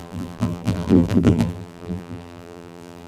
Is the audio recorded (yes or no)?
no